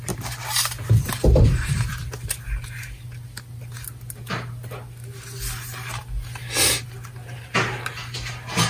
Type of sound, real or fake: real